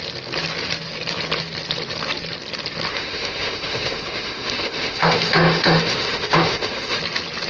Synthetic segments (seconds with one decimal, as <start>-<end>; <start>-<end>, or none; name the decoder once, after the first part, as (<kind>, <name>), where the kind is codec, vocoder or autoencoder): 2.9-7.0 (autoencoder, DAC-VAE)